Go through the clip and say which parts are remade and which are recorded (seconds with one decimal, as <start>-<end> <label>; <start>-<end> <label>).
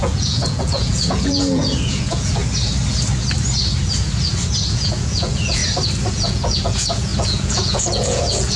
0.0-2.4 remade; 2.4-4.7 recorded; 4.7-5.6 remade; 5.6-6.1 recorded; 6.1-8.6 remade